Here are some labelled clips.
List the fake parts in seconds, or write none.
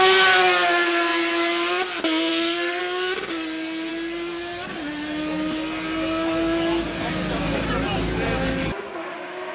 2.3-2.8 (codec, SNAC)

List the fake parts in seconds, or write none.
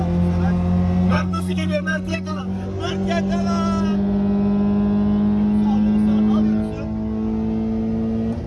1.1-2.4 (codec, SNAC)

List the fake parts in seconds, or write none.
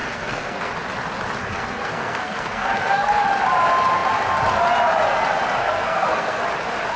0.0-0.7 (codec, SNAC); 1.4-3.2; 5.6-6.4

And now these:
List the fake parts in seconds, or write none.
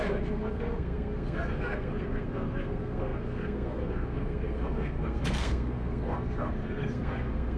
0.0-7.6 (codec, SNAC)